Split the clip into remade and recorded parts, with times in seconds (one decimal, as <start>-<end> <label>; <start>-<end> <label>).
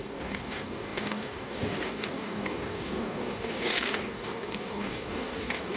0.0-5.8 remade